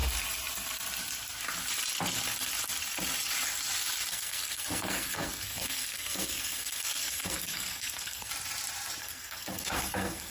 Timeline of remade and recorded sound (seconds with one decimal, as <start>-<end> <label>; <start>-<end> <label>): 0.0-4.1 recorded; 4.1-8.3 remade; 8.3-9.0 recorded; 9.0-10.3 remade